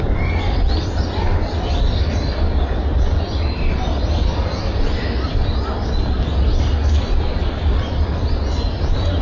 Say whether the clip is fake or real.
real